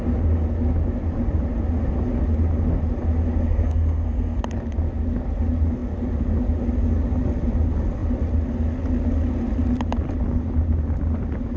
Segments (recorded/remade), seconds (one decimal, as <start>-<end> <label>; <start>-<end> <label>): 0.0-3.4 recorded; 3.4-4.4 remade; 4.4-11.6 recorded